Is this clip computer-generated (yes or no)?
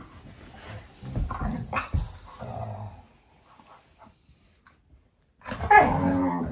no